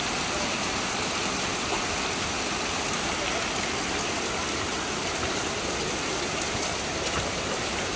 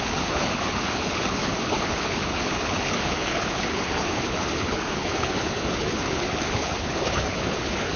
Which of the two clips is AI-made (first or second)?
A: second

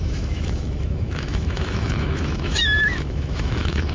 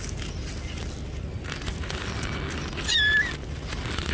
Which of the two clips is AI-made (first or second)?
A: first